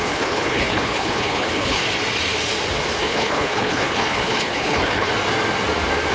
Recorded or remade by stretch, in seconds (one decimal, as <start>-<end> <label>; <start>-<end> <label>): 0.0-1.8 remade; 1.8-3.0 recorded; 3.0-5.1 remade; 5.1-6.1 recorded